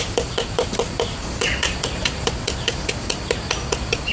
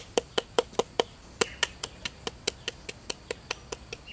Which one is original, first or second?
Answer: second